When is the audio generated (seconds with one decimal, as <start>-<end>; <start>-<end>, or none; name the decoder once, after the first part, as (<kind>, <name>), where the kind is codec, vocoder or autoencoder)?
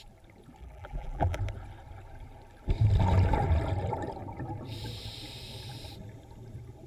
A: 0.6-1.4 (vocoder, BigVGAN v2)